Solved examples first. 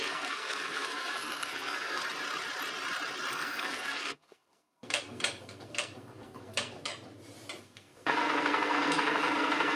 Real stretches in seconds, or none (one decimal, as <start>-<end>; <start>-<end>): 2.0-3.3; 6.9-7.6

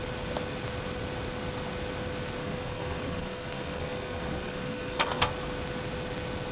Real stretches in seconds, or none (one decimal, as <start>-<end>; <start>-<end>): 0.0-2.4; 5.3-6.5

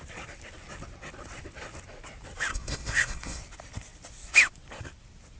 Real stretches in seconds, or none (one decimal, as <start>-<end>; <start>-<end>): 0.0-2.5; 3.4-5.4

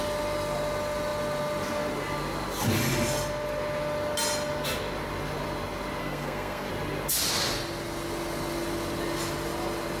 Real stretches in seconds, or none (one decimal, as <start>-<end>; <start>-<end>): 0.0-6.0; 6.7-10.0

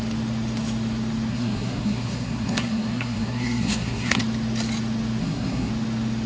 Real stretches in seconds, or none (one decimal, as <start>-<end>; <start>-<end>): 0.0-1.3; 4.2-5.2; 5.7-6.3

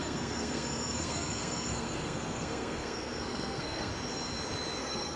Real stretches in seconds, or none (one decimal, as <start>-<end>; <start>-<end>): 3.9-4.8